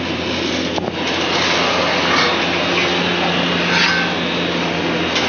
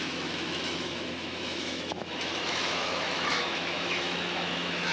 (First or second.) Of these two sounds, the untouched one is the first